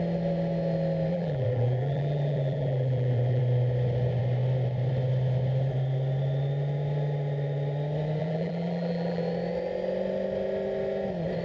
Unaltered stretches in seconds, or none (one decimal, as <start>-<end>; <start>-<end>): 0.0-1.1; 3.4-8.2; 9.2-11.4